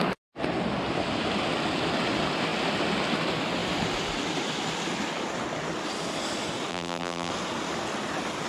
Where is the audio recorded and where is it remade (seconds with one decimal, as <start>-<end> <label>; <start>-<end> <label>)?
0.0-6.7 recorded; 6.7-7.3 remade; 7.3-8.5 recorded